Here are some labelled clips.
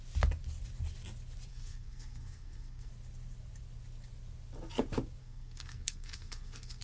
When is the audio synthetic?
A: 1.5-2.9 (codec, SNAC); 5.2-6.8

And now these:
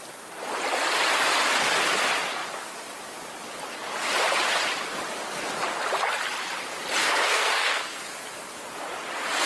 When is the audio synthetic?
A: 7.0-8.0 (codec, SNAC)

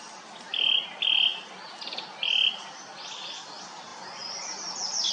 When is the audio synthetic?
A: none

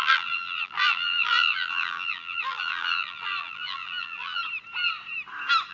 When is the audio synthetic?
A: 0.0-4.4 (vocoder, BigVGAN v2)

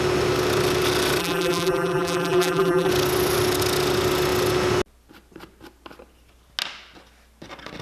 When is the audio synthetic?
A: 1.2-2.9 (vocoder, BigVGAN v2)